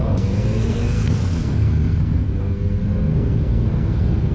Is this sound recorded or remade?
remade